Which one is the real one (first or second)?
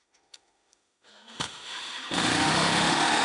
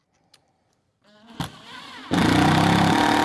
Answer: second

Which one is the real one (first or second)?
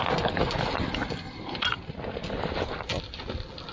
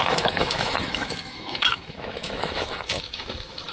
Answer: first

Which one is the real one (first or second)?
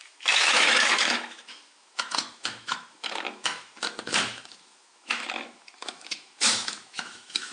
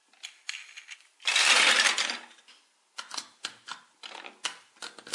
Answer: second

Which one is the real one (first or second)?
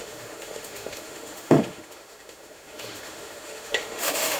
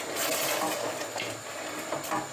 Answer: second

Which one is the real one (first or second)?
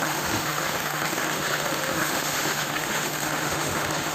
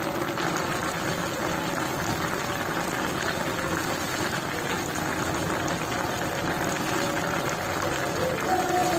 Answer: second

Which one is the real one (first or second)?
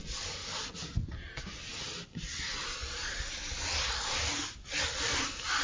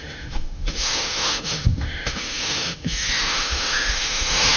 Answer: first